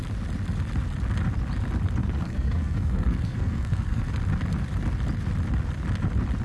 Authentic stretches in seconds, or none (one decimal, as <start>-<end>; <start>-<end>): 0.0-2.0; 4.0-6.4